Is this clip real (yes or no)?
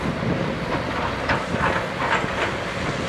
yes